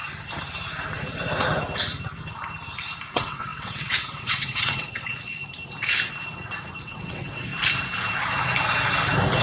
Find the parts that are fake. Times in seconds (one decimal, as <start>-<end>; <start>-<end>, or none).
3.1-5.4; 6.8-7.5